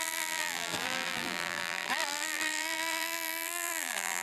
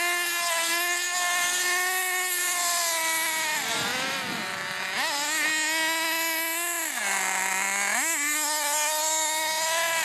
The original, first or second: second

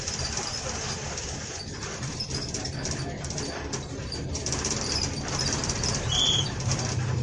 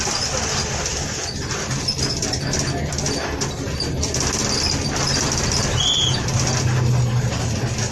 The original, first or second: second